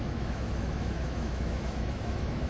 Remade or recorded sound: remade